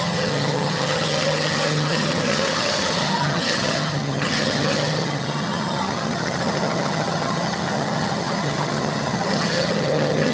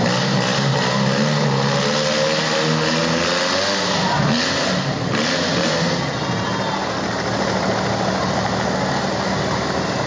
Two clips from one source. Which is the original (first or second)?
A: second